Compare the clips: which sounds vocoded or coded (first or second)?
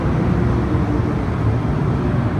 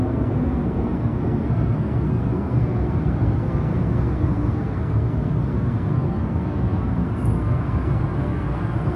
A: second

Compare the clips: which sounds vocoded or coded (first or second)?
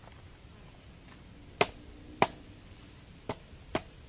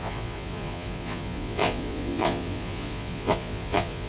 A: second